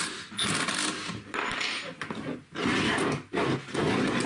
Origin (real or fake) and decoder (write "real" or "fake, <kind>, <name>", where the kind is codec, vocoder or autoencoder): real